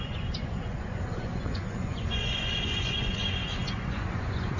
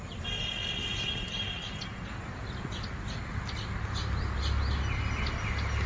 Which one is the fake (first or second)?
first